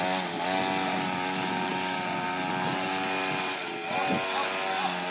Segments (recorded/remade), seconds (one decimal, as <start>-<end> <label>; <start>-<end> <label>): 0.0-5.1 recorded